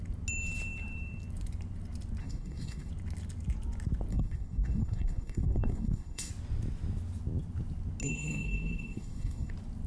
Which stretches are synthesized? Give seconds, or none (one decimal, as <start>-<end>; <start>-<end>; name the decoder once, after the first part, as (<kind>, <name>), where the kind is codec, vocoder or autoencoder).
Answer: 2.2-2.9 (codec, SNAC); 4.1-6.3; 8.0-9.5